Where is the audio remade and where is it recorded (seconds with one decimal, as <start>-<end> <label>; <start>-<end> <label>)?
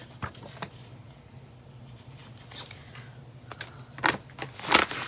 0.0-5.1 recorded